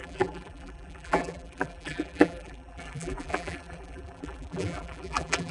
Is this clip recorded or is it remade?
remade